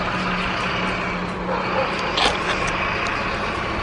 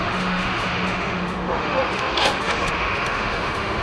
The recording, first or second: first